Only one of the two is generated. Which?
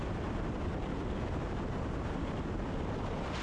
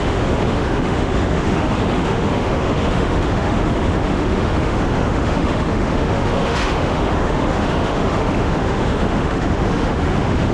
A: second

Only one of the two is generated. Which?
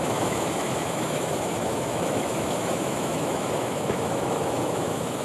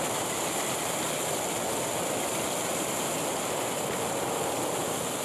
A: first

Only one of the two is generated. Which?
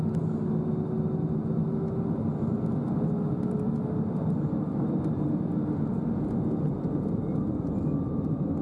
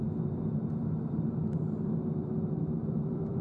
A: second